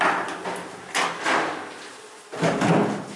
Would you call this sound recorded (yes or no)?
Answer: yes